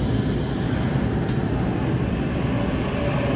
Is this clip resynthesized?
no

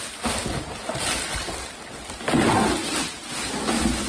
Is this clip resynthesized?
no